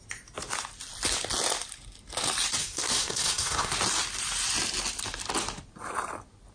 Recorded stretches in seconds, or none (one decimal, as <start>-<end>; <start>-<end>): 0.0-2.6; 3.7-6.5